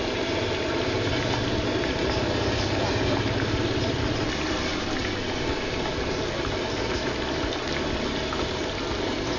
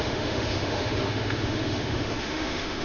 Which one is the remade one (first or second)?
second